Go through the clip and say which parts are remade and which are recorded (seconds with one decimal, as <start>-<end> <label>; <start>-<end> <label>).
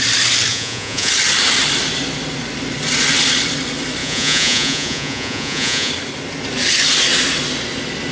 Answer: 0.0-0.5 recorded; 0.5-1.1 remade; 1.1-4.0 recorded; 4.0-5.9 remade; 5.9-8.1 recorded